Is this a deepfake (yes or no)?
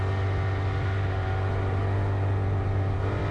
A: no